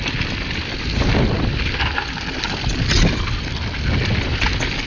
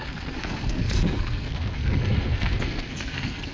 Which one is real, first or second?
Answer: first